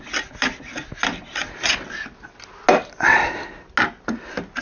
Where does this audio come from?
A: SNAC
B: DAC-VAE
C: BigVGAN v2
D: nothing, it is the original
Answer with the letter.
D